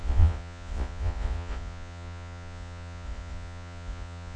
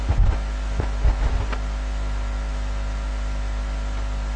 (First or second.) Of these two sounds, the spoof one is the first